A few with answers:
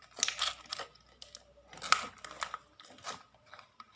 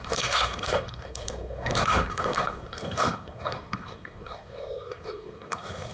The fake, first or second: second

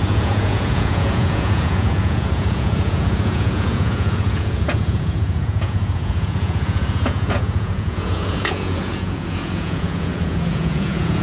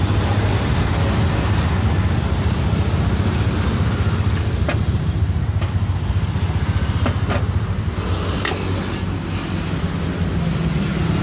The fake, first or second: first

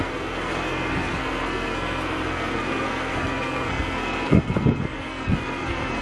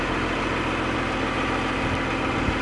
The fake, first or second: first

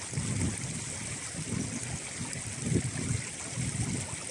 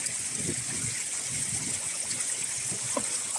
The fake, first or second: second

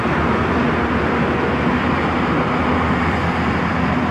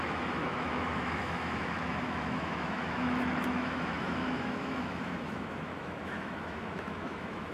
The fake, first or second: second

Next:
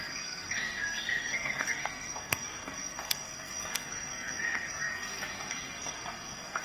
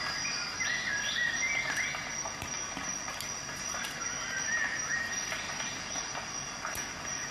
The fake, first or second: first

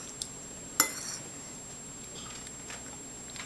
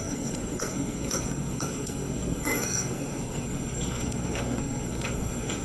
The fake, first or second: second